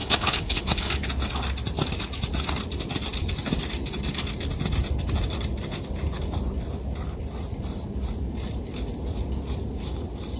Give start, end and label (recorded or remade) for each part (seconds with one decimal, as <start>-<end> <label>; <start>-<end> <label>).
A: 0.0-1.0 remade; 1.0-10.4 recorded